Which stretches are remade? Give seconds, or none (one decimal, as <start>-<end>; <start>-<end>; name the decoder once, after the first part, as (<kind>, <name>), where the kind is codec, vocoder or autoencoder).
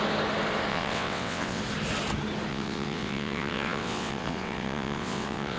0.7-1.6 (vocoder, WaveNeXt); 2.5-5.6